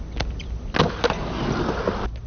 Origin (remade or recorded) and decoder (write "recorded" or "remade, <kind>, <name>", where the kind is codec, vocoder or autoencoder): recorded